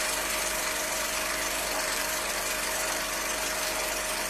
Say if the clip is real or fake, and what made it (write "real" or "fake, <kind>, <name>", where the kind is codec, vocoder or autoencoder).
fake, vocoder, BigVGAN v2